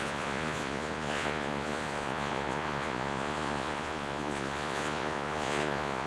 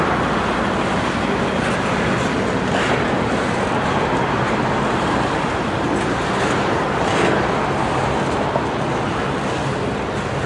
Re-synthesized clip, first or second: first